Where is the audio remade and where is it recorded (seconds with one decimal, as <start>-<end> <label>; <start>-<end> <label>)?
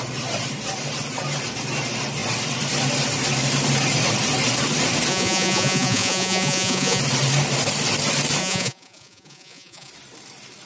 0.0-5.1 recorded; 5.1-7.0 remade; 7.0-8.4 recorded; 8.4-9.9 remade; 9.9-10.7 recorded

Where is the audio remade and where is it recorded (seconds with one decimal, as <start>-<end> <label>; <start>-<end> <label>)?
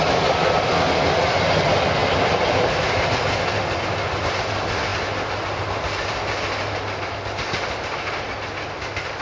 0.0-9.2 recorded